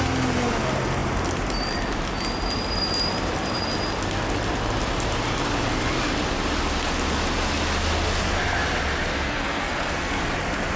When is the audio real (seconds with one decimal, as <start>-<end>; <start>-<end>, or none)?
0.0-9.1; 10.2-10.8